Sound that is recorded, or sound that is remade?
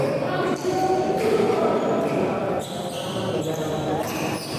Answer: recorded